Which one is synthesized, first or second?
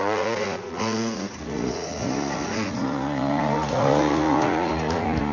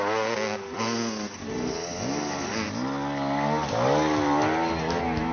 first